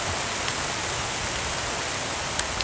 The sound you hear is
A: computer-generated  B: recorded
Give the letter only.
B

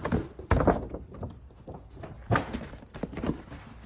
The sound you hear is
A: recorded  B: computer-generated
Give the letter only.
A